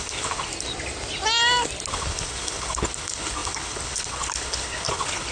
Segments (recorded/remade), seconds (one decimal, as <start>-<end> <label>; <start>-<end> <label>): 0.0-0.5 remade; 0.5-1.9 recorded; 1.9-5.3 remade